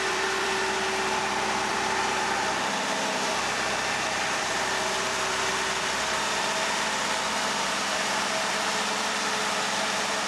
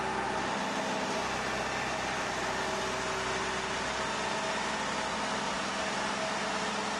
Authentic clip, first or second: second